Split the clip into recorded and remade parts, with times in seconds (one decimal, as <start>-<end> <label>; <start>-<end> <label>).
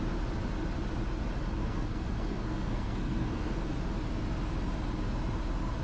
0.0-1.6 recorded; 1.6-3.7 remade; 3.7-5.8 recorded